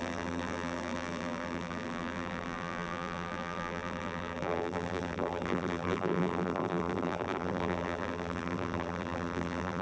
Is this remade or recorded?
remade